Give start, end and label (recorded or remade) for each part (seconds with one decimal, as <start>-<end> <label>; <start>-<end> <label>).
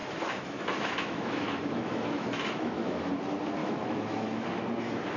0.0-3.1 remade; 3.1-3.6 recorded; 3.6-4.5 remade; 4.5-5.2 recorded